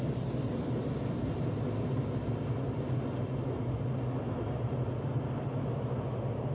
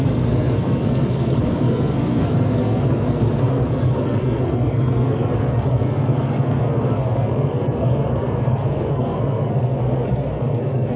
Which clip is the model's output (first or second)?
second